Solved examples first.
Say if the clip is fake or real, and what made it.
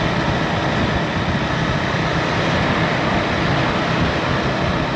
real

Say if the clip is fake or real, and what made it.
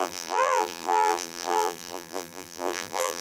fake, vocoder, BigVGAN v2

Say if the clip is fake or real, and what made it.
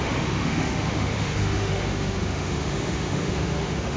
fake, autoencoder, DAC-VAE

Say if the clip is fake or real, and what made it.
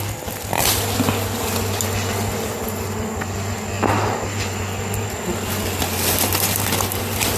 real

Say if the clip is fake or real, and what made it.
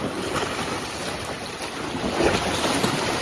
real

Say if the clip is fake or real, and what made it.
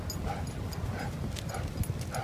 real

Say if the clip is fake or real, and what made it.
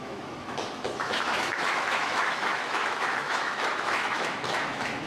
fake, autoencoder, DAC-VAE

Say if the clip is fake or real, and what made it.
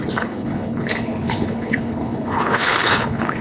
fake, codec, HILCodec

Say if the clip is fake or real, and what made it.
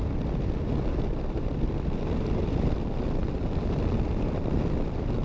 real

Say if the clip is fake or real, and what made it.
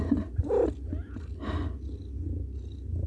real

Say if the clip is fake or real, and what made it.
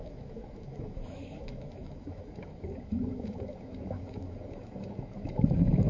fake, autoencoder, DAC-VAE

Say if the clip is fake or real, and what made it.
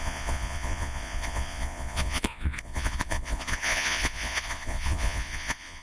fake, vocoder, Vocos